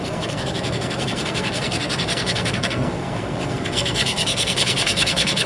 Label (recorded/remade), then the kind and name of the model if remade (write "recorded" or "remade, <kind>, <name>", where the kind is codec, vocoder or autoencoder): remade, codec, SNAC